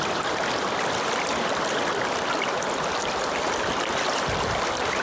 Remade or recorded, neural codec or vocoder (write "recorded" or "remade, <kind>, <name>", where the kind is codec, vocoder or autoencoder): remade, vocoder, BigVGAN v2